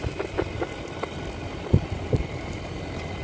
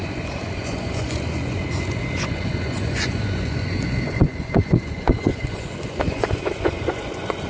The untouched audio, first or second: first